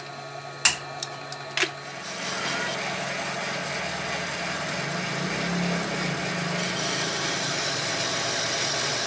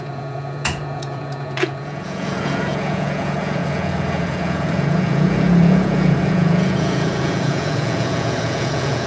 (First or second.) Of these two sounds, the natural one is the first